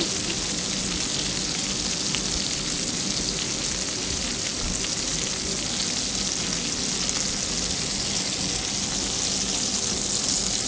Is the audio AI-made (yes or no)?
no